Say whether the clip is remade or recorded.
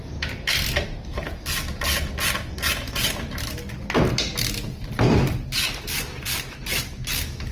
recorded